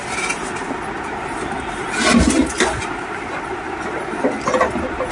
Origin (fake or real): real